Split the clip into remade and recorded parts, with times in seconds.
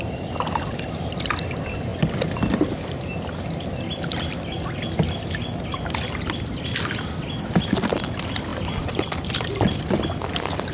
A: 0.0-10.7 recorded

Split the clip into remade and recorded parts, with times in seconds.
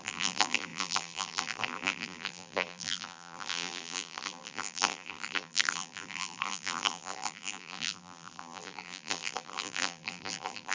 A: 0.0-10.7 remade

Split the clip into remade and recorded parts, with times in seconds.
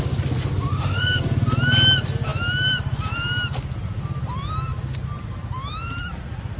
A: 0.0-0.7 recorded; 0.7-1.2 remade; 1.2-6.6 recorded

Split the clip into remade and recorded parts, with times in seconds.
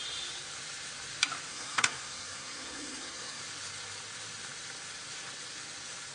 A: 0.0-1.5 recorded; 1.5-3.4 remade; 3.4-6.1 recorded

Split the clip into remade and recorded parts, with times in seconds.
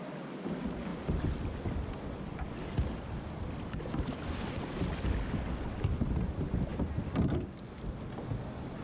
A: 0.0-8.8 recorded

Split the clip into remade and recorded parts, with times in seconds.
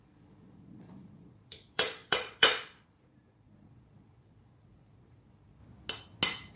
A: 0.0-5.6 remade; 5.6-6.6 recorded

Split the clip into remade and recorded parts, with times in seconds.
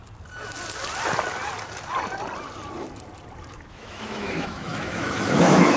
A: 0.0-3.5 recorded; 3.5-5.8 remade